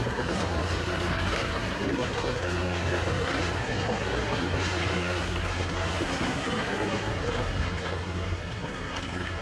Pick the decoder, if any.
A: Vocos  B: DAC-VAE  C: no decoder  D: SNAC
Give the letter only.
D